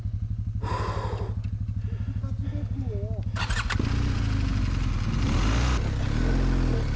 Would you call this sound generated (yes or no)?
no